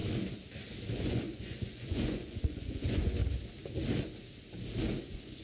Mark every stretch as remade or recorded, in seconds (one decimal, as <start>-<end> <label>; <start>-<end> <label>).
0.0-0.9 recorded; 0.9-3.2 remade; 3.2-5.0 recorded; 5.0-5.4 remade